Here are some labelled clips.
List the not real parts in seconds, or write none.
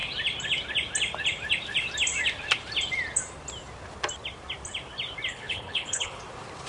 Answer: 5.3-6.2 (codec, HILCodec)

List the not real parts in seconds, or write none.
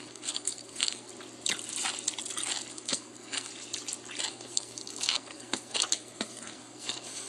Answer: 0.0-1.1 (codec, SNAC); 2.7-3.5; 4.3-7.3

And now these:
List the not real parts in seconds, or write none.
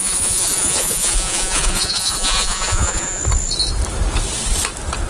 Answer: 0.0-3.2 (vocoder, Vocos)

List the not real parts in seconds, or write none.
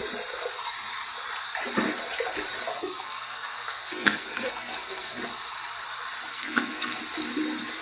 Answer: 2.7-5.2 (codec, SNAC); 6.3-7.0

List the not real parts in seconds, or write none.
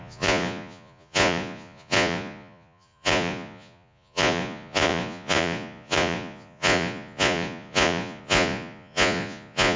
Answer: 0.0-9.8 (vocoder, Vocos)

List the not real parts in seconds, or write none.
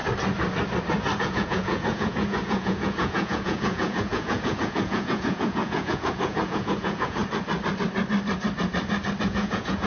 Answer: 1.2-7.2 (vocoder, Vocos); 9.2-9.9